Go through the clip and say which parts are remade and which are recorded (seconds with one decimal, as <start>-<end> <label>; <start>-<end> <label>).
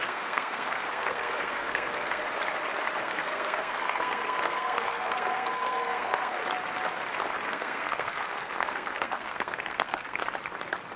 0.0-2.2 remade; 2.2-3.0 recorded; 3.0-6.4 remade; 6.4-7.5 recorded; 7.5-10.2 remade; 10.2-11.0 recorded